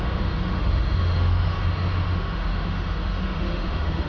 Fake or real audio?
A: fake